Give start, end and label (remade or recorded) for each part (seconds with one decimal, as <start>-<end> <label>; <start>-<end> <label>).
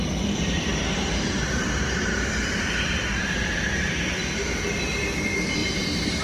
0.0-0.7 recorded; 0.7-4.4 remade; 4.4-5.6 recorded; 5.6-6.2 remade